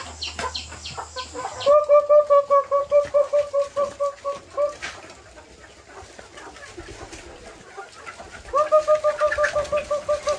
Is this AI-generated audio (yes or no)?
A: no